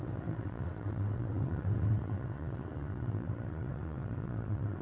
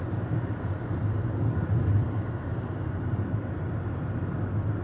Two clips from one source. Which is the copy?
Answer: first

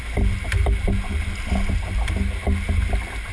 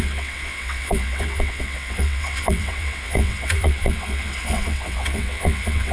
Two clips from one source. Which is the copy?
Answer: second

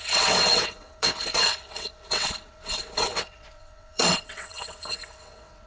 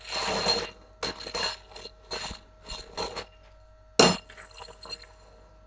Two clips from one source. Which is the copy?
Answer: first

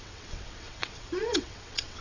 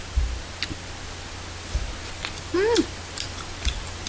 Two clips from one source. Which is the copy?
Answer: first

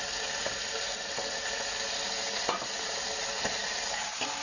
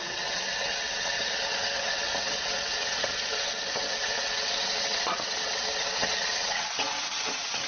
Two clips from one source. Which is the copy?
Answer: second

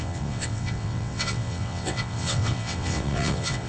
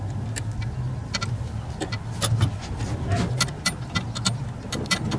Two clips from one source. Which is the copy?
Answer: first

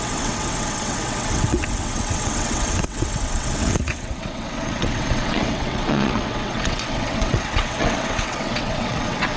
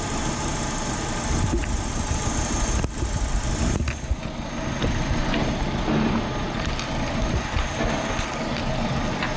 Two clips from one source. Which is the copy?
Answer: first